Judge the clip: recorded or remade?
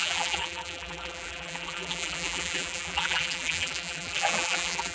remade